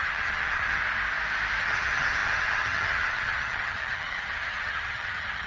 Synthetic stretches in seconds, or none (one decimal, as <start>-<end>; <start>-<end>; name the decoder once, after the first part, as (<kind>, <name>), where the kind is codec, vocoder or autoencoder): 0.0-0.8 (vocoder, HiFi-GAN); 1.6-5.5